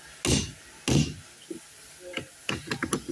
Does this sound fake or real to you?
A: real